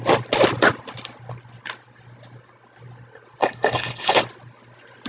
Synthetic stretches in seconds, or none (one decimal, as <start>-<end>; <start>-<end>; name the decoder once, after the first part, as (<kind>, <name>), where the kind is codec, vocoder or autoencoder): 3.4-4.2 (codec, HILCodec)